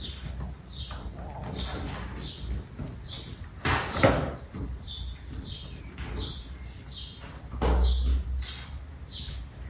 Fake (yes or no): no